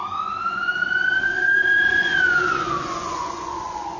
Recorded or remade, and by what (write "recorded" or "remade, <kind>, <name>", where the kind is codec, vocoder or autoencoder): remade, vocoder, Vocos